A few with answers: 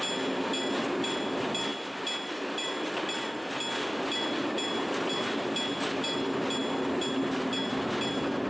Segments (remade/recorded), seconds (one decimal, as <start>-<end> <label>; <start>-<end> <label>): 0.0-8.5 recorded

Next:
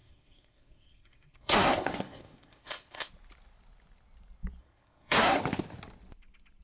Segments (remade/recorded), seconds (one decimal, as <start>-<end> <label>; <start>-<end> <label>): 0.0-3.1 remade; 3.1-4.6 recorded; 4.6-5.4 remade; 5.4-6.6 recorded

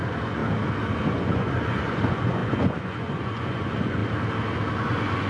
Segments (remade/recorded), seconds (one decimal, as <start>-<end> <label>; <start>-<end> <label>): 0.0-0.4 remade; 0.4-1.1 recorded; 1.1-4.0 remade; 4.0-4.8 recorded; 4.8-5.3 remade